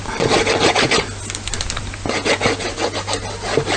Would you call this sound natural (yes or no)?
yes